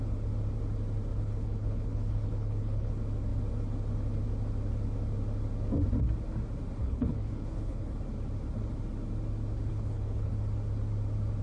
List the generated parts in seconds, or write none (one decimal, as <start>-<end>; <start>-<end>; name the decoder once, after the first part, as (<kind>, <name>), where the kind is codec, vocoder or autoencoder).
1.1-2.9 (codec, HILCodec); 6.8-8.0; 9.7-10.3